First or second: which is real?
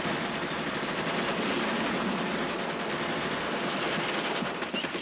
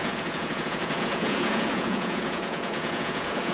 first